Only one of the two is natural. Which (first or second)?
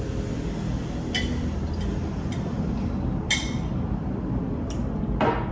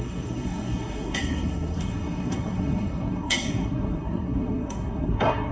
first